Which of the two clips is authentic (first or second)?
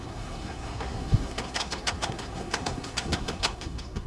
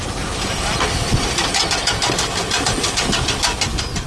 second